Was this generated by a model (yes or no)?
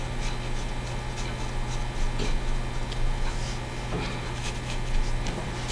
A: no